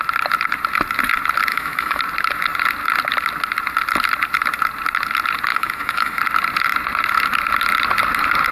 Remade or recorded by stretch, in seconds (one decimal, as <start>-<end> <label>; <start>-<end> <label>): 0.0-1.5 recorded; 1.5-2.0 remade; 2.0-5.5 recorded; 5.5-6.2 remade; 6.2-8.5 recorded